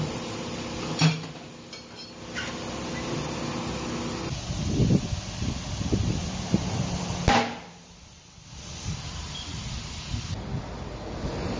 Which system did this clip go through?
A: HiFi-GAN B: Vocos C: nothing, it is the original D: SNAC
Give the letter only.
C